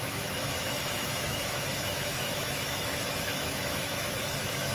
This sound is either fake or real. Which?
fake